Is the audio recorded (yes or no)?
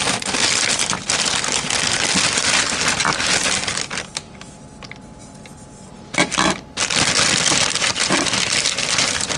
yes